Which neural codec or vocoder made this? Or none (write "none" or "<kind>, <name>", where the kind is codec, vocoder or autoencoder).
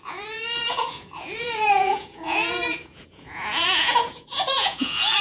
vocoder, Vocos